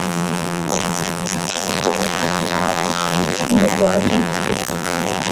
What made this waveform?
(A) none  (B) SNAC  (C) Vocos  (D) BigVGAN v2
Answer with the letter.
D